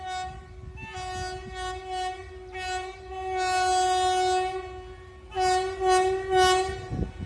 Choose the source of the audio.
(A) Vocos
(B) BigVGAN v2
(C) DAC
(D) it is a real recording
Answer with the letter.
D